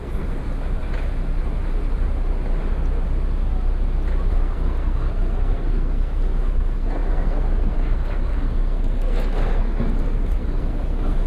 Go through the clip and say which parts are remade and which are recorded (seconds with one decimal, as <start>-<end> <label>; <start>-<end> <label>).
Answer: 0.0-0.4 remade; 0.4-4.3 recorded; 4.3-11.3 remade